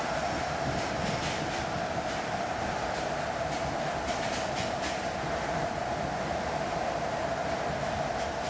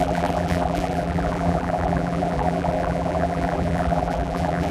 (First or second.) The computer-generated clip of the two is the second